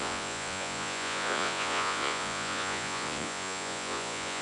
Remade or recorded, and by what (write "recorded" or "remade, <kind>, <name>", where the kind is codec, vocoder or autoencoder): remade, vocoder, Vocos